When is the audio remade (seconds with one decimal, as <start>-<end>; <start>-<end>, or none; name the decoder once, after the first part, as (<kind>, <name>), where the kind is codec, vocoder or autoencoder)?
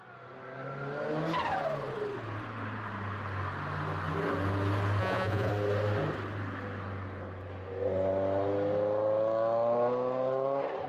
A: 5.0-5.5 (vocoder, Vocos)